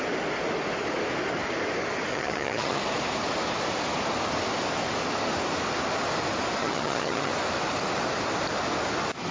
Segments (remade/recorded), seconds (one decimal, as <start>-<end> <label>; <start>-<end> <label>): 0.0-2.1 recorded; 2.1-2.8 remade; 2.8-6.6 recorded; 6.6-7.3 remade; 7.3-9.3 recorded